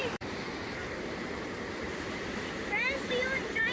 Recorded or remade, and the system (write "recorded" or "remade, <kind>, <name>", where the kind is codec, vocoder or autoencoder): remade, vocoder, BigVGAN v2